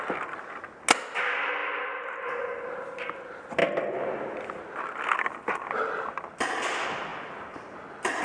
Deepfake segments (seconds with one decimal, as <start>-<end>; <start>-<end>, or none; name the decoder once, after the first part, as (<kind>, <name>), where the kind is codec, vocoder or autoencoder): none